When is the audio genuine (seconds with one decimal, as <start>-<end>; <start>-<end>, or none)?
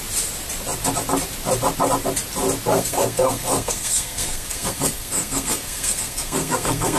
0.0-2.7